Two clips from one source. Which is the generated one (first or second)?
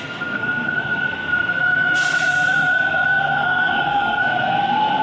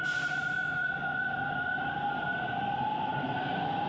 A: first